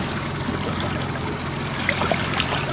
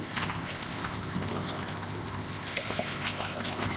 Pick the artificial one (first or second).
second